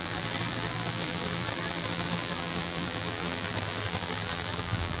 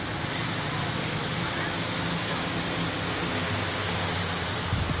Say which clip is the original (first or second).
second